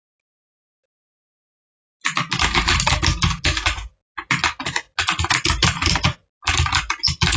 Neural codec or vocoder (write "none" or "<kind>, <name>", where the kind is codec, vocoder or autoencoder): none